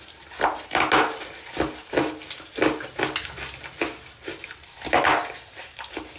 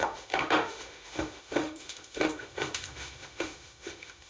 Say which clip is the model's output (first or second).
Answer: second